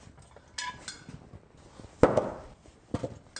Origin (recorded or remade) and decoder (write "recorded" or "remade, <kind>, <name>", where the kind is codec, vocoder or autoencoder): recorded